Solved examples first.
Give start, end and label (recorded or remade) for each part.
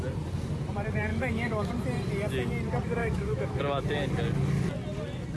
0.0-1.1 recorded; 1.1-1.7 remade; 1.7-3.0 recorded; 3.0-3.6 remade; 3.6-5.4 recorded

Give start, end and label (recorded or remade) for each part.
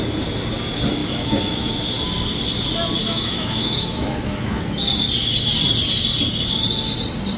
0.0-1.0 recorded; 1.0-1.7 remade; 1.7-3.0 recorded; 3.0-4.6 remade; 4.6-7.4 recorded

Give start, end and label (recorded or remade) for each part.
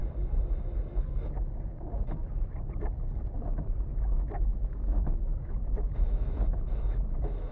0.0-3.9 recorded; 3.9-7.5 remade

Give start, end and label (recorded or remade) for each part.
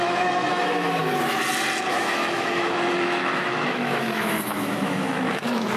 0.0-1.0 remade; 1.0-1.9 recorded; 1.9-5.8 remade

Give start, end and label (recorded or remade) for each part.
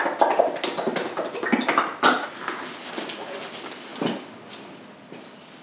0.0-5.6 recorded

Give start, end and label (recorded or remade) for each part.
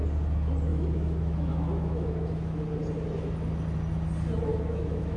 0.0-0.7 recorded; 0.7-2.6 remade; 2.6-4.5 recorded; 4.5-5.2 remade